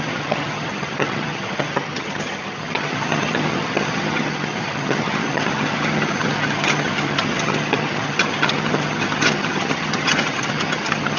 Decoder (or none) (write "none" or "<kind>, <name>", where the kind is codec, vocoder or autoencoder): vocoder, HiFi-GAN